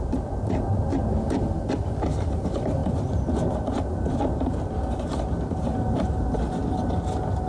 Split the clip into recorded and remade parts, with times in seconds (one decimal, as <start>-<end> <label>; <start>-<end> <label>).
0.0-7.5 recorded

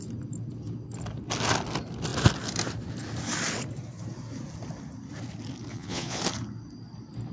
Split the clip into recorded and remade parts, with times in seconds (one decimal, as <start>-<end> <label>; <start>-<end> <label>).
0.0-5.7 recorded; 5.7-6.2 remade; 6.2-7.3 recorded

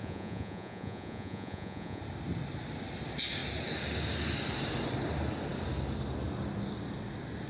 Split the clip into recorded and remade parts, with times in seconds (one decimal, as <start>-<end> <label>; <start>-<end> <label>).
0.0-2.0 remade; 2.0-7.5 recorded